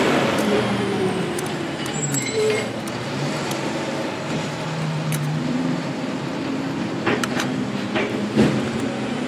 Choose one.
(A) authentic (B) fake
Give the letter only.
B